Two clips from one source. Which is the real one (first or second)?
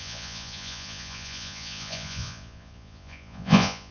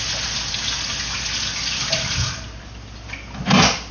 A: second